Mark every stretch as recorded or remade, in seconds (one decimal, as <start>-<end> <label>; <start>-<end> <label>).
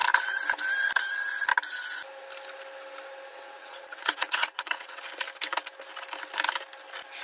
0.0-3.3 recorded; 3.3-5.0 remade; 5.0-7.2 recorded